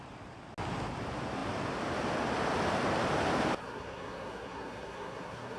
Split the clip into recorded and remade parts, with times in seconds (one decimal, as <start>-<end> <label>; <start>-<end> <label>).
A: 0.0-3.6 recorded; 3.6-5.6 remade